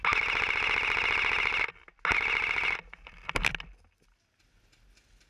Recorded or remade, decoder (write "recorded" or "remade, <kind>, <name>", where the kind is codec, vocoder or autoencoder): recorded